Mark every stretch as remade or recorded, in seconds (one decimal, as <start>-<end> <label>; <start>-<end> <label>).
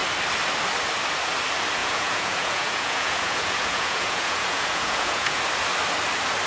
0.0-1.8 recorded; 1.8-5.4 remade; 5.4-6.5 recorded